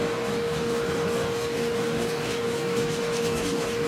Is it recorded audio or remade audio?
remade